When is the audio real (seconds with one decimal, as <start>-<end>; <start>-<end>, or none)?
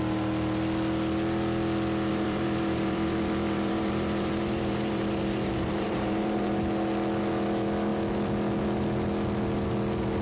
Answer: 0.0-2.1; 6.6-10.2